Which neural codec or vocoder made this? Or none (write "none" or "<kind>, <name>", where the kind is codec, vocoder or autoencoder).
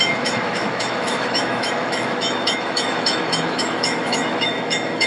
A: autoencoder, DAC-VAE